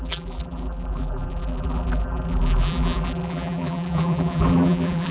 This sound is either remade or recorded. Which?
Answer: remade